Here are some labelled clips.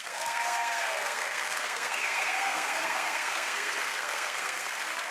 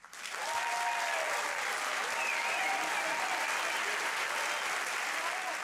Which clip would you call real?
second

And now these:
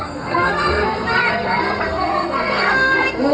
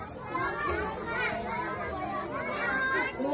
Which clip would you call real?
second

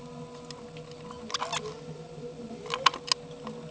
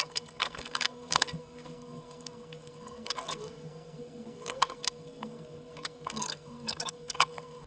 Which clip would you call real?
first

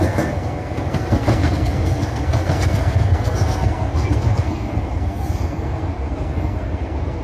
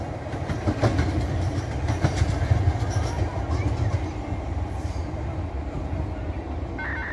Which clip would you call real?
second